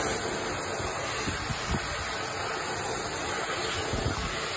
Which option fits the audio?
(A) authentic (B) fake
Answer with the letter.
A